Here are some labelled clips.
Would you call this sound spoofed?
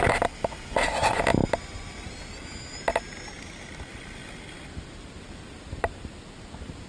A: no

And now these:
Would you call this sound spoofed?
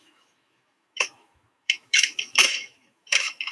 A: yes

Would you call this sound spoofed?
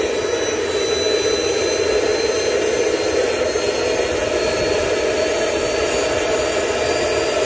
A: no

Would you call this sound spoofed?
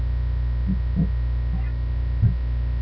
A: no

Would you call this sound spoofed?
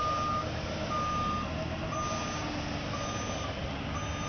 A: no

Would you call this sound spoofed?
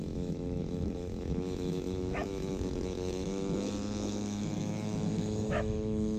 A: yes